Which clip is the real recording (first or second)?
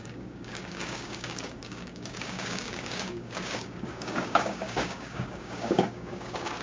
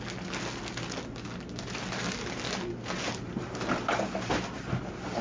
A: second